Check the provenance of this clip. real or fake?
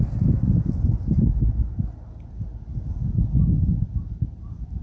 real